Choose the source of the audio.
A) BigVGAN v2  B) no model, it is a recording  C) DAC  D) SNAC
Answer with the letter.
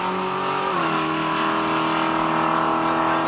B